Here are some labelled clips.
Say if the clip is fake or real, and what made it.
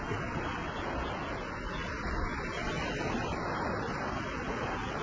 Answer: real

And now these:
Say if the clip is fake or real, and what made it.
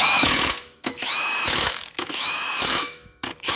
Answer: fake, autoencoder, DAC-VAE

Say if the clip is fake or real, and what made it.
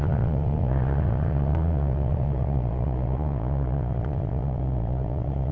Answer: fake, vocoder, Vocos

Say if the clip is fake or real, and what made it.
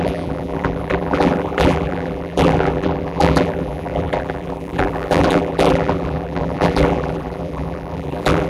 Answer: fake, vocoder, BigVGAN v2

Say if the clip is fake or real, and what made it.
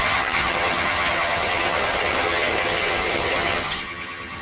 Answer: fake, vocoder, HiFi-GAN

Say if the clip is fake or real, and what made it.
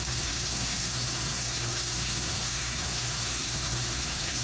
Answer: fake, codec, SNAC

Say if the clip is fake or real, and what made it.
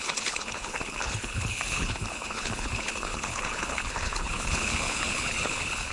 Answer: fake, codec, HILCodec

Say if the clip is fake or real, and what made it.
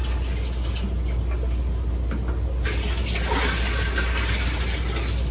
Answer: real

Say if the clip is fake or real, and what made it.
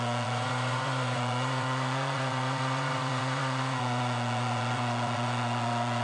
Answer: fake, vocoder, Vocos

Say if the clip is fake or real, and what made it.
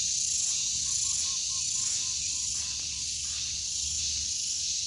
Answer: real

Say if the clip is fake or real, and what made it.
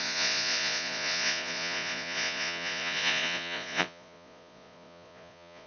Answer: fake, vocoder, Vocos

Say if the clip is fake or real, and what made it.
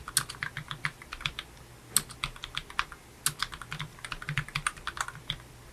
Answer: real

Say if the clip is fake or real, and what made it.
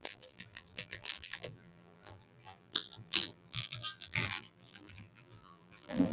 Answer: fake, vocoder, BigVGAN v2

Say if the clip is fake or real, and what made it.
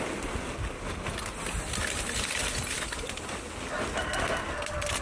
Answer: real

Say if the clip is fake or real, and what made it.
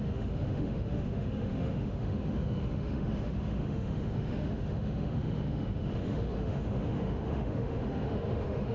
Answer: fake, autoencoder, DAC-VAE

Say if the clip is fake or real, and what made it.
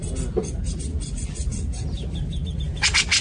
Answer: real